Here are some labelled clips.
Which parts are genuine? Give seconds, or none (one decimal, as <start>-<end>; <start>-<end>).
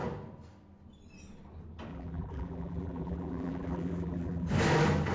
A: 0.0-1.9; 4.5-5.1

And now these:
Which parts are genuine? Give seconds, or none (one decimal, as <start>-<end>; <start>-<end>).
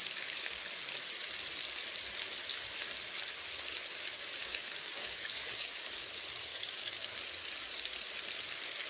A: 0.6-4.4; 6.1-6.5; 7.3-8.9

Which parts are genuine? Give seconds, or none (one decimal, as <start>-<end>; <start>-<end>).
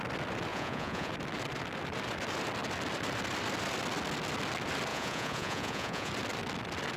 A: 0.0-0.5; 1.1-4.9; 6.1-7.0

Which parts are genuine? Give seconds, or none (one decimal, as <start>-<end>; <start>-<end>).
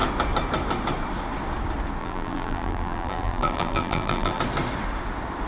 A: 0.0-2.0; 4.4-5.5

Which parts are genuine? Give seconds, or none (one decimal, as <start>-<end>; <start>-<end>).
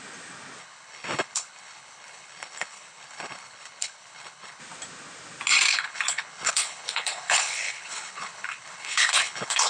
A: 0.0-0.6; 4.6-5.7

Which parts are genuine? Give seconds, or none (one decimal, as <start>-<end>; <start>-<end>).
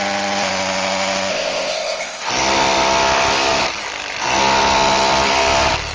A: 0.0-1.3; 2.3-5.9